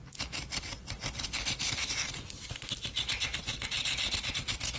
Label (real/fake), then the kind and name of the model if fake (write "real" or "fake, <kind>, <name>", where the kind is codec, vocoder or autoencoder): real